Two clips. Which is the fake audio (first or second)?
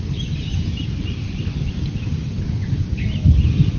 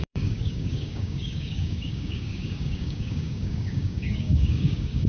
second